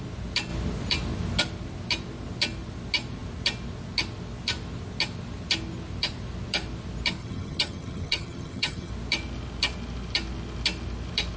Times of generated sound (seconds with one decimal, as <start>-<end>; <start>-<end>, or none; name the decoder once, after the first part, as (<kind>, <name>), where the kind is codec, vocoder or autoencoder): 7.2-8.9 (vocoder, HiFi-GAN)